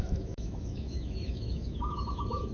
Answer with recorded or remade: remade